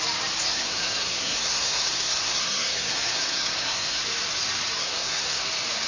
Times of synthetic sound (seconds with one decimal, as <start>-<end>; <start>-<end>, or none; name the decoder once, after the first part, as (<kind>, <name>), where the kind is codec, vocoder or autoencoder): 0.5-4.0 (codec, SNAC); 4.8-5.4